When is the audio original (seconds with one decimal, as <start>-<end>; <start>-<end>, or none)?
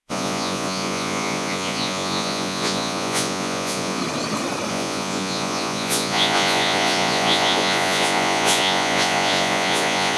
4.0-4.7